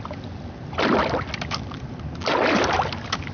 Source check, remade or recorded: recorded